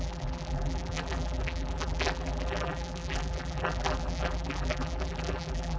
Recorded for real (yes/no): no